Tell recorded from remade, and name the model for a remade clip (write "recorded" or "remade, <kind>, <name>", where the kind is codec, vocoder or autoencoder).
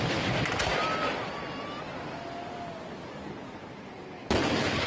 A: recorded